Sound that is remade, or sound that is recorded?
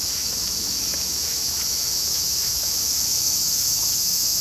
remade